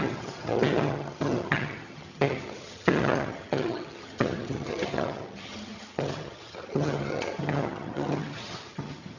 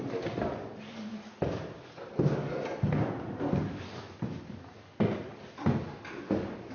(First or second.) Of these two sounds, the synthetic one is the first